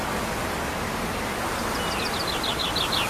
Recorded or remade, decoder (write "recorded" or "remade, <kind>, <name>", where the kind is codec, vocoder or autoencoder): recorded